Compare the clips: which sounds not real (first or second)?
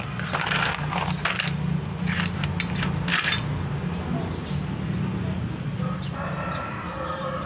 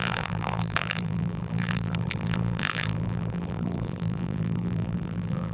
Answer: second